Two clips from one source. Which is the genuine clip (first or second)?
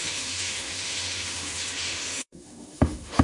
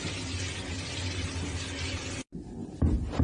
second